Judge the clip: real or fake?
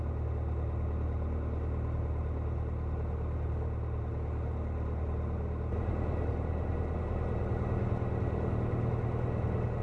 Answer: real